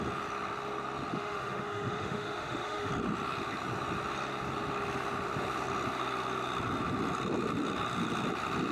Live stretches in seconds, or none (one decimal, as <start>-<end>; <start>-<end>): 0.0-1.1; 2.9-8.7